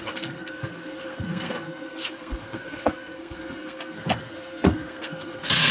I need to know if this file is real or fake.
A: fake